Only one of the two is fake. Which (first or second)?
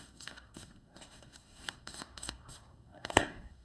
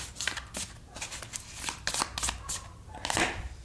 first